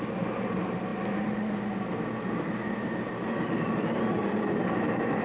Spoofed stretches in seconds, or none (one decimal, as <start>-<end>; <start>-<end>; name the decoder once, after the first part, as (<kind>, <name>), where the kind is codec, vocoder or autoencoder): none